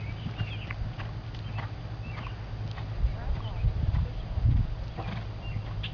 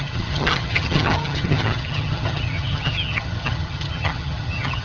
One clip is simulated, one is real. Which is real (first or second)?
first